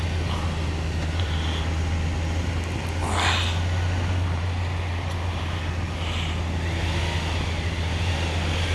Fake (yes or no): no